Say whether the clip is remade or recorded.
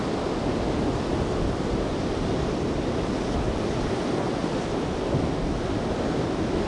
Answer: recorded